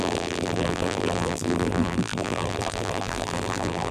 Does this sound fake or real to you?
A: fake